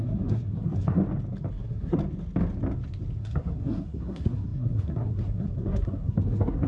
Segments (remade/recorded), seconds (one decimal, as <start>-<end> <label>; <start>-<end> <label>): 0.0-1.0 remade; 1.0-1.5 recorded; 1.5-2.0 remade; 2.0-3.2 recorded; 3.2-6.7 remade